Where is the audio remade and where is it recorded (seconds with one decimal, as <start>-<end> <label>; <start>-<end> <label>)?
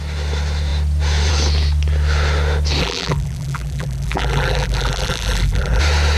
0.0-2.8 recorded; 2.8-5.8 remade; 5.8-6.2 recorded